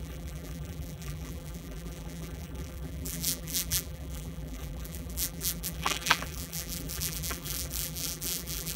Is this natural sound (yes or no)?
no